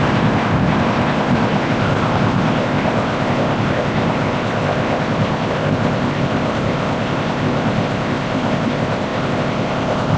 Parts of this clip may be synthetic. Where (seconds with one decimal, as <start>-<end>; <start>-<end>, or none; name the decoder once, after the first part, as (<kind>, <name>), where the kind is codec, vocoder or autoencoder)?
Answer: 0.0-10.2 (codec, ZipCodec)